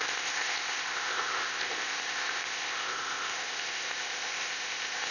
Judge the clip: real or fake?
fake